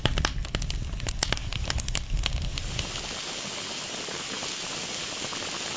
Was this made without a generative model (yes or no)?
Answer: yes